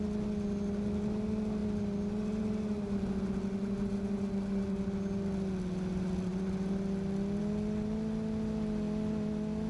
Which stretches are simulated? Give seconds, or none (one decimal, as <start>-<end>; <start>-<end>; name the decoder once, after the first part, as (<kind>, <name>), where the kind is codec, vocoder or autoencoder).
none